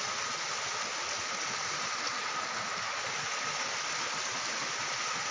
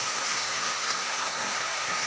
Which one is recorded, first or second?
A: first